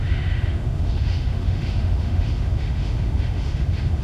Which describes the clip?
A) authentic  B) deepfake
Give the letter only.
B